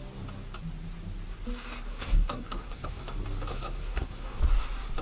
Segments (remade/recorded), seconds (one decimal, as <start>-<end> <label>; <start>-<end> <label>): 0.0-1.9 recorded; 1.9-3.0 remade; 3.0-3.5 recorded; 3.5-4.4 remade; 4.4-5.0 recorded